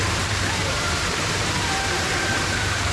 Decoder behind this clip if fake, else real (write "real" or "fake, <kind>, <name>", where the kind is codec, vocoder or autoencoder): fake, vocoder, BigVGAN v2